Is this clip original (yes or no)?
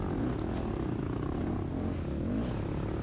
yes